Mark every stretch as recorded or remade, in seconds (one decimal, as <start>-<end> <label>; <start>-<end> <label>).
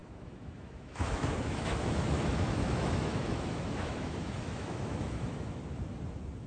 0.0-5.6 remade; 5.6-6.5 recorded